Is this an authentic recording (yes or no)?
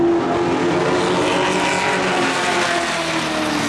yes